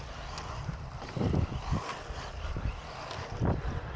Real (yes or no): yes